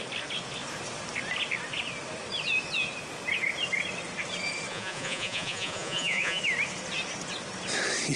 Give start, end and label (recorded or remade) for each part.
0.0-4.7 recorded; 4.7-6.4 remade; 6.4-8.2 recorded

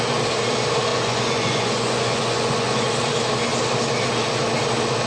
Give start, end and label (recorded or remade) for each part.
0.0-0.9 recorded; 0.9-2.8 remade; 2.8-5.1 recorded

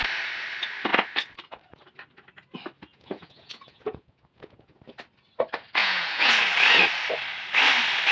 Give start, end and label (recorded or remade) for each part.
0.0-2.9 recorded; 2.9-4.8 remade; 4.8-5.8 recorded; 5.8-6.4 remade; 6.4-8.1 recorded

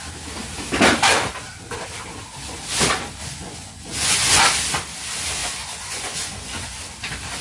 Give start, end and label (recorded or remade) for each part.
0.0-3.2 recorded; 3.2-4.4 remade; 4.4-5.4 recorded; 5.4-6.8 remade; 6.8-7.4 recorded

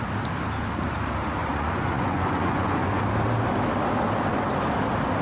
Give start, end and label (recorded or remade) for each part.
0.0-1.4 recorded; 1.4-3.0 remade; 3.0-5.2 recorded

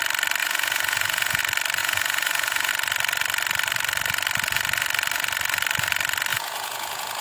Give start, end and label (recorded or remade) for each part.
0.0-0.4 recorded; 0.4-1.4 remade; 1.4-1.8 recorded; 1.8-2.7 remade; 2.7-6.3 recorded; 6.3-7.2 remade

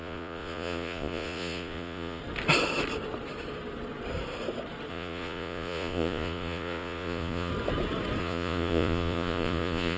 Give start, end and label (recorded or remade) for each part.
0.0-2.2 remade; 2.2-4.9 recorded; 4.9-7.5 remade; 7.5-8.2 recorded; 8.2-10.0 remade